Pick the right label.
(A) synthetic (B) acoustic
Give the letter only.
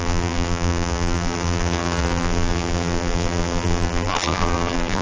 A